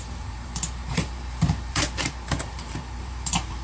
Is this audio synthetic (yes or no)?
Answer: yes